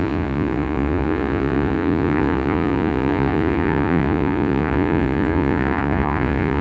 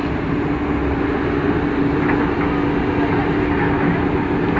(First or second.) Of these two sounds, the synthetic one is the first